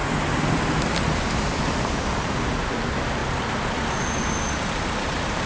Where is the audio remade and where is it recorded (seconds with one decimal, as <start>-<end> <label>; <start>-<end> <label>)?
0.0-1.6 recorded; 1.6-3.2 remade; 3.2-4.5 recorded; 4.5-5.5 remade